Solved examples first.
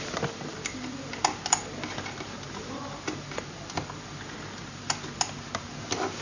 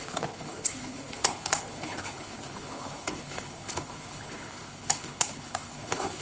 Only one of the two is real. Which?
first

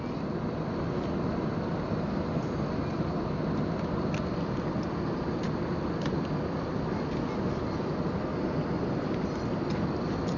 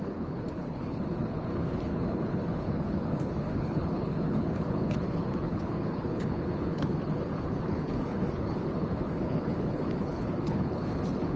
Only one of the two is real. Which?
first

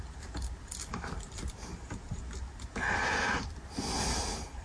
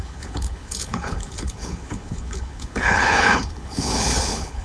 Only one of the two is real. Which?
first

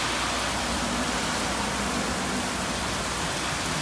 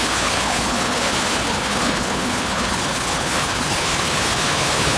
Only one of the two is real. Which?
first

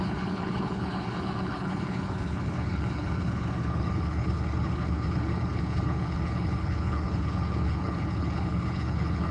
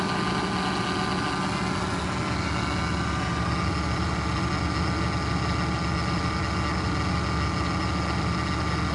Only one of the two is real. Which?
second